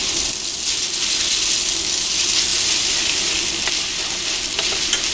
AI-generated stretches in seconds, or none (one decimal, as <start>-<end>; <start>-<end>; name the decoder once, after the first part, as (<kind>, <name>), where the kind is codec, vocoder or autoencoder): 0.8-2.5 (vocoder, BigVGAN v2)